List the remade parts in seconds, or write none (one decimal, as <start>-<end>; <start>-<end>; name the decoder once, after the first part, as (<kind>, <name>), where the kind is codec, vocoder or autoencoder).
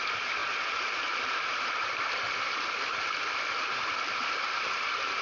none